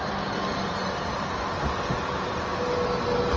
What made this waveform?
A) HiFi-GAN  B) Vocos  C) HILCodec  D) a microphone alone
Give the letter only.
D